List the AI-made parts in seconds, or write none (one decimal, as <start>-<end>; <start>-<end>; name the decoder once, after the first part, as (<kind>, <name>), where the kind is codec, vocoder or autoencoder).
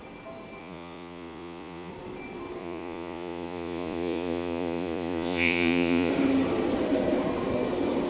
0.6-1.9 (vocoder, Vocos); 2.6-6.1